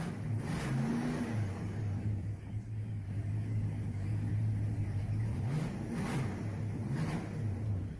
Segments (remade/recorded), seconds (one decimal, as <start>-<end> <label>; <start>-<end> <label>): 0.0-0.9 recorded; 0.9-4.3 remade; 4.3-8.0 recorded